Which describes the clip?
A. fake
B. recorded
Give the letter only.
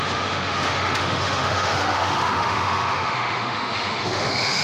A